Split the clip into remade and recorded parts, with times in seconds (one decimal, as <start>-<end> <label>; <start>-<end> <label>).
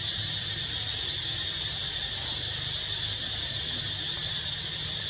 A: 0.0-5.1 recorded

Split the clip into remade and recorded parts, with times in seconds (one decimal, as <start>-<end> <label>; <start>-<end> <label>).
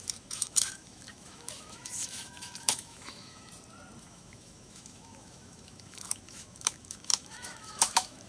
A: 0.0-3.5 remade; 3.5-4.0 recorded; 4.0-8.3 remade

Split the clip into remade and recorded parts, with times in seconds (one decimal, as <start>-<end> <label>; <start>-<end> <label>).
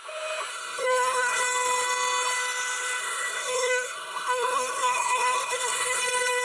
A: 0.0-0.5 recorded; 0.5-1.4 remade; 1.4-3.0 recorded; 3.0-6.0 remade; 6.0-6.4 recorded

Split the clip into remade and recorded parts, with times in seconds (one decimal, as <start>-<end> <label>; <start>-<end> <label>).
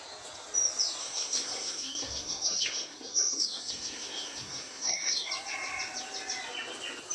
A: 0.0-1.0 recorded; 1.0-5.3 remade; 5.3-7.1 recorded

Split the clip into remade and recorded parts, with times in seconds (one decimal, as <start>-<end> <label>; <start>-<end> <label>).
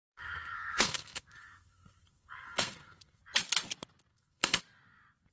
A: 0.0-3.2 remade; 3.2-4.1 recorded; 4.1-4.6 remade; 4.6-5.3 recorded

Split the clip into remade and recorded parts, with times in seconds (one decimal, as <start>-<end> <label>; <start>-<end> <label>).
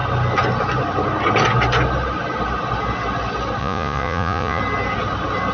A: 0.0-3.6 recorded; 3.6-4.6 remade; 4.6-5.5 recorded